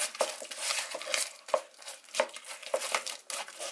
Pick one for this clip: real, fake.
real